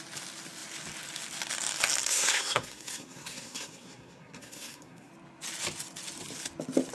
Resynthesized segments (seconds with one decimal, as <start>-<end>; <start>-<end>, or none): 2.0-5.1